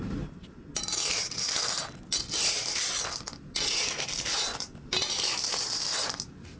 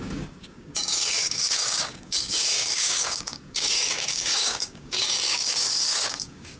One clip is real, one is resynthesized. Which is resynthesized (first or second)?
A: second